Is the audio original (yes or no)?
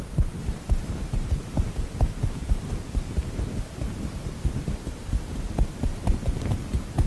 yes